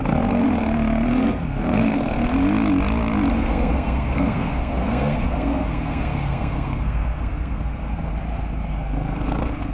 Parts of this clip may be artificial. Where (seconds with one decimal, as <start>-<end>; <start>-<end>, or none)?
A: 0.0-2.2; 3.3-8.1; 8.7-9.7